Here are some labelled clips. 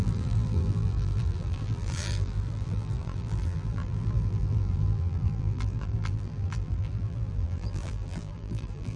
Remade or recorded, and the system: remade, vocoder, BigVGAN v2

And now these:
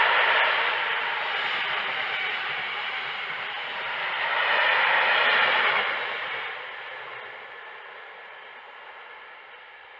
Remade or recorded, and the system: recorded